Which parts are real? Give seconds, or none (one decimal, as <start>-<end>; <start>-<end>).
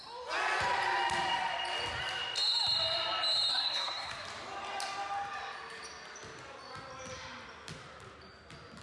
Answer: 0.0-3.5; 4.1-8.8